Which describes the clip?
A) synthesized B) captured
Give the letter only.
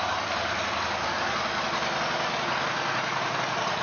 B